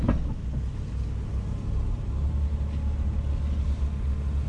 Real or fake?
real